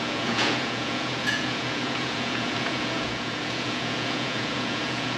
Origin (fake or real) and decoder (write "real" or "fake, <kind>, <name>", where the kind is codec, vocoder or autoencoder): fake, vocoder, Vocos